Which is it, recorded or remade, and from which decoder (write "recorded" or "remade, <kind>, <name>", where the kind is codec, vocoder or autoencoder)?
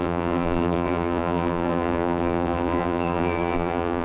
remade, vocoder, BigVGAN v2